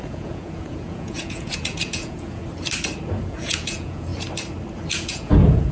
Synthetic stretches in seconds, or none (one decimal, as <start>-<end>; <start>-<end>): 0.0-2.4; 3.1-4.1; 4.9-5.7